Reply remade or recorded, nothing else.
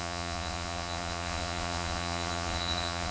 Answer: remade